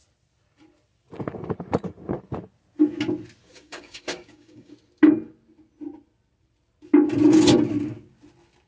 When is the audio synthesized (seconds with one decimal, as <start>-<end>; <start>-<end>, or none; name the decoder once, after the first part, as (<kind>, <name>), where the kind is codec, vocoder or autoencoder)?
3.5-4.7 (codec, DAC)